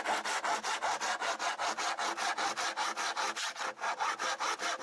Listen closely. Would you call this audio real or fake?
real